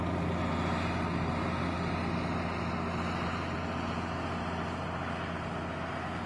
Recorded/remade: recorded